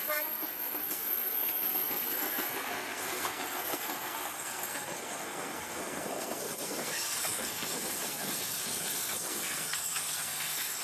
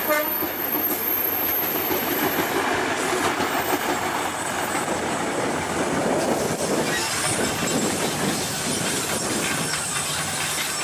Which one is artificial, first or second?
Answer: first